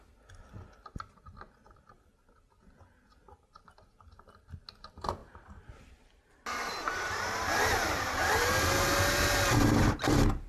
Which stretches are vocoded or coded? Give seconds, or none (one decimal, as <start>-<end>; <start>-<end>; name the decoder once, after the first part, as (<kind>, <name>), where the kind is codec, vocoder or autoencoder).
5.2-8.5 (vocoder, BigVGAN v2)